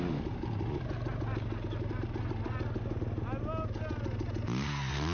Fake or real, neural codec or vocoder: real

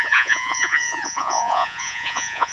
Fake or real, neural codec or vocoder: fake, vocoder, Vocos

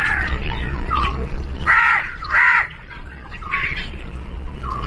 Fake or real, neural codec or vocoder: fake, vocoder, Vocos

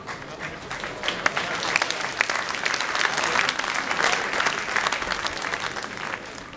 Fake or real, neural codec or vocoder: real